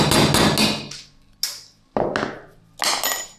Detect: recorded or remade recorded